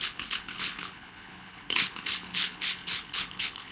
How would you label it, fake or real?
fake